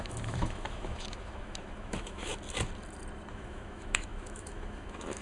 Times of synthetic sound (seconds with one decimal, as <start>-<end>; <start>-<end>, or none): 0.0-2.3; 3.3-5.2